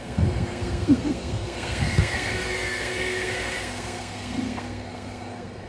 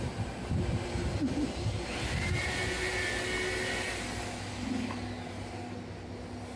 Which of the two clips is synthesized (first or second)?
first